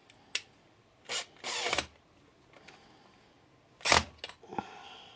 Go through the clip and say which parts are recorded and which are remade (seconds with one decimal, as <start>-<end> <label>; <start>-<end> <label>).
0.0-5.2 recorded